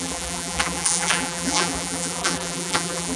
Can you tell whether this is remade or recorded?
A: remade